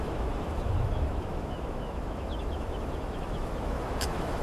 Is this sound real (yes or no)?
no